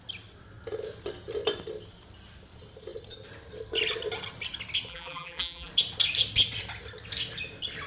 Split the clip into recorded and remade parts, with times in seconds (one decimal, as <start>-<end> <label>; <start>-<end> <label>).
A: 0.0-4.9 recorded; 4.9-5.7 remade; 5.7-7.9 recorded